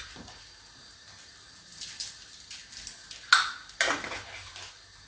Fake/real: real